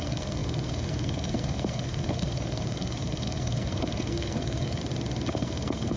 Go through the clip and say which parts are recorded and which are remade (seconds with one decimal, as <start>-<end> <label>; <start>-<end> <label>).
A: 0.0-4.8 remade; 4.8-5.3 recorded; 5.3-6.0 remade